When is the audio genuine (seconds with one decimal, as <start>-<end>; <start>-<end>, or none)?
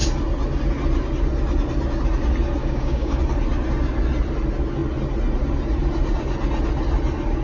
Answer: 0.0-2.6; 3.2-7.4